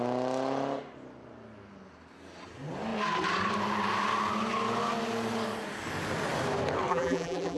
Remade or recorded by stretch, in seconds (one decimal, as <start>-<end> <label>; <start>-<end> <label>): 0.0-6.9 recorded; 6.9-7.6 remade